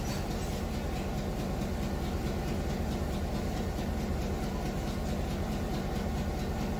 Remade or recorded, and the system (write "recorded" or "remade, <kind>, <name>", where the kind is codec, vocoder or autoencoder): recorded